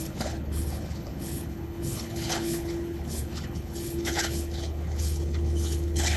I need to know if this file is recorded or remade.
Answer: remade